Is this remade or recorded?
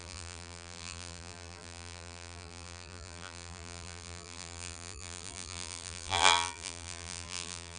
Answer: remade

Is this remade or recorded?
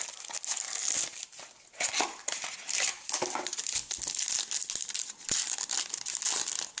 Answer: recorded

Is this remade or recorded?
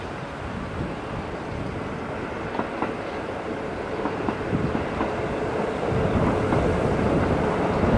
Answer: recorded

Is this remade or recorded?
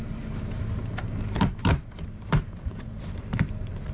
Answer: remade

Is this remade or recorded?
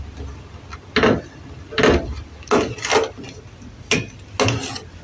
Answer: recorded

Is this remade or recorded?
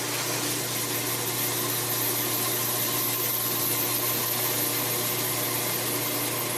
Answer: recorded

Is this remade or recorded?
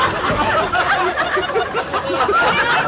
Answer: recorded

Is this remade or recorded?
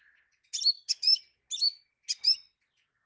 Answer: recorded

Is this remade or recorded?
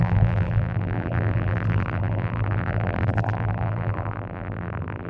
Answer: remade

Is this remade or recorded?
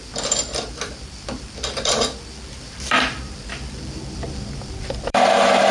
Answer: remade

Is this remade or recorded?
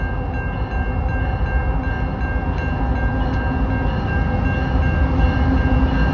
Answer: recorded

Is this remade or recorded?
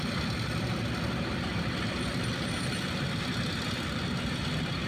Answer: recorded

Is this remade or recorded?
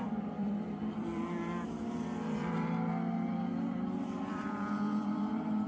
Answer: remade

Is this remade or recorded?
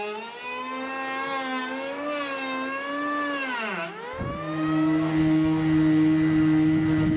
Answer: recorded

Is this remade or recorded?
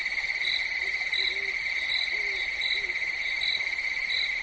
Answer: recorded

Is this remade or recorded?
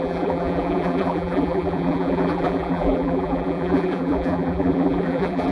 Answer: remade